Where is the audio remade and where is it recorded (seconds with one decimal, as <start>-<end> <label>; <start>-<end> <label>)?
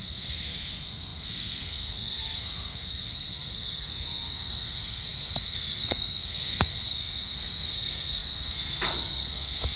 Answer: 0.0-9.8 remade